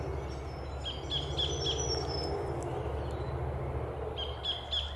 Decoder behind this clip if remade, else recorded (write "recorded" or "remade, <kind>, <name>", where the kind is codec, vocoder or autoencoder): recorded